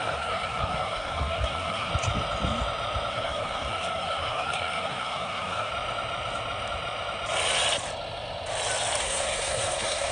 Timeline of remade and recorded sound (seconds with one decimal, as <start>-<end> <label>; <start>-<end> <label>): 0.0-1.9 remade; 1.9-3.1 recorded; 3.1-5.7 remade; 5.7-9.0 recorded; 9.0-10.1 remade

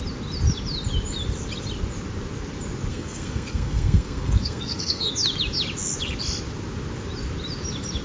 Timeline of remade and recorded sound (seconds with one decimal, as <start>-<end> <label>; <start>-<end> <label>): 0.0-2.9 recorded; 2.9-5.1 remade; 5.1-8.0 recorded

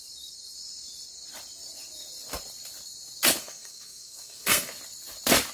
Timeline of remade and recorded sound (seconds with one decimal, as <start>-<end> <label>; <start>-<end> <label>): 0.0-3.4 recorded; 3.4-4.7 remade; 4.7-5.5 recorded

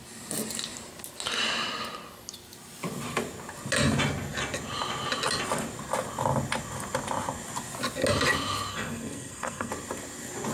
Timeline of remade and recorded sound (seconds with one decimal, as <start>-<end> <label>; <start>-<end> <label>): 0.0-8.7 recorded; 8.7-9.7 remade; 9.7-10.5 recorded

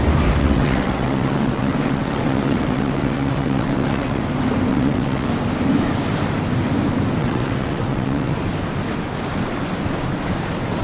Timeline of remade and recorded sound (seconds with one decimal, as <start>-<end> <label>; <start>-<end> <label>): 0.0-0.4 recorded; 0.4-4.2 remade; 4.2-4.7 recorded; 4.7-5.3 remade; 5.3-7.2 recorded; 7.2-8.4 remade; 8.4-10.8 recorded

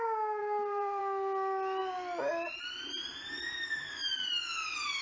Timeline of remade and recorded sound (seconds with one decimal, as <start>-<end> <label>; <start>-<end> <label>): 0.0-0.4 recorded; 0.4-1.0 remade; 1.0-5.0 recorded

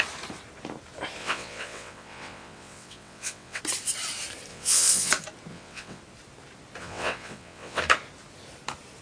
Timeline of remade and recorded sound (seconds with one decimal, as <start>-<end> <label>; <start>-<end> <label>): 0.0-1.2 recorded; 1.2-3.6 remade; 3.6-4.5 recorded; 4.5-5.1 remade; 5.1-5.5 recorded; 5.5-6.0 remade; 6.0-6.8 recorded; 6.8-7.8 remade; 7.8-9.0 recorded

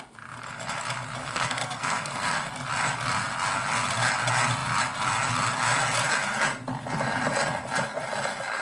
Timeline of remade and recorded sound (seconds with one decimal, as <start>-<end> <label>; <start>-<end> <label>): 0.0-1.2 recorded; 1.2-2.5 remade; 2.5-8.6 recorded